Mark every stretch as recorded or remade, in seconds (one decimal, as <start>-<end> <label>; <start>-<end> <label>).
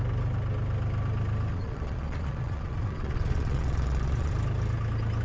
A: 0.0-1.5 recorded; 1.5-4.3 remade; 4.3-5.2 recorded